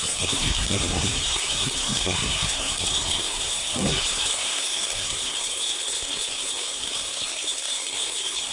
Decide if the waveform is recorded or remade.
remade